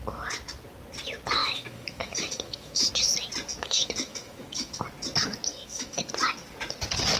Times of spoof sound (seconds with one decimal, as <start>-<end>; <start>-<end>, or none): 1.4-2.9; 3.5-4.8; 5.5-6.1

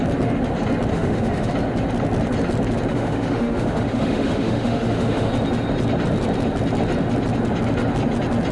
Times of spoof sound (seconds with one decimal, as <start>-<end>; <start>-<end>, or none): 0.9-1.5; 2.9-5.3

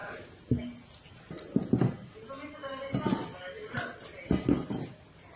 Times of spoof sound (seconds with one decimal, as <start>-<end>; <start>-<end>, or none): none

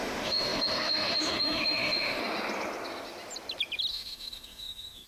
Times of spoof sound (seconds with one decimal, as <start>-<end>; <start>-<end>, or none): 0.0-2.2; 3.9-5.1

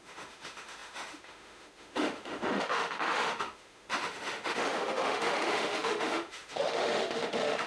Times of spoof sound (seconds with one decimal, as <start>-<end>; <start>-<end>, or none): 0.0-7.7

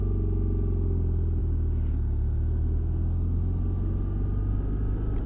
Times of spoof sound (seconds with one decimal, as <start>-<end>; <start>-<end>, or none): none

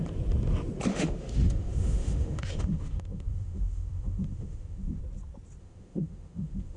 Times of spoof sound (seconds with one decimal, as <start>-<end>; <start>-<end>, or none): 0.9-5.0; 5.6-6.8